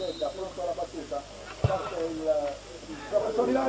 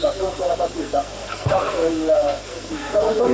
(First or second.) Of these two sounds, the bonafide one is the first